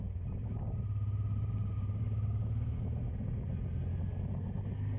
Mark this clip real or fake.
real